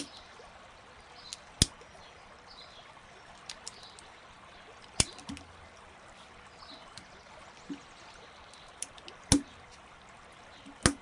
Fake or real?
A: real